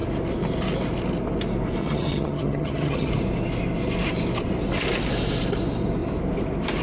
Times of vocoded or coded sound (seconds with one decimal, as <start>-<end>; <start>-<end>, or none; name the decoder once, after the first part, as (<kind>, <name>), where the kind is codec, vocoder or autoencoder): 1.8-3.1 (vocoder, HiFi-GAN)